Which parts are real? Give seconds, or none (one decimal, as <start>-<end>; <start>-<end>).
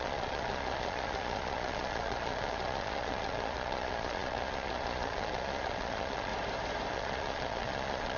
6.3-6.9